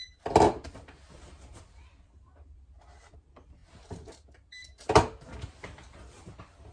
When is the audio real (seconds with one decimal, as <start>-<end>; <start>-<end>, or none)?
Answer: 0.0-6.7